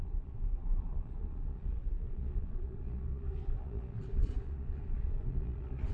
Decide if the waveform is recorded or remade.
remade